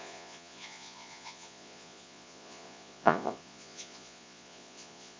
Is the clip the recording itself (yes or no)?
no